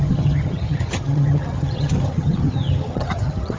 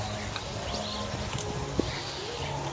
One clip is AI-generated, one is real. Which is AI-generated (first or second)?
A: first